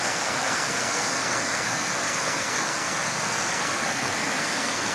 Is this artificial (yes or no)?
yes